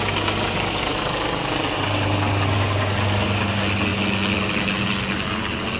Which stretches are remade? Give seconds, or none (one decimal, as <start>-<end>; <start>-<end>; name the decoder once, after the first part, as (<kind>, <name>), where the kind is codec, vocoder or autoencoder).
none